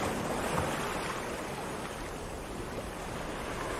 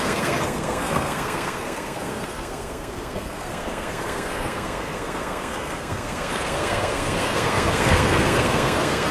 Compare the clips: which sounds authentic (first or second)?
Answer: first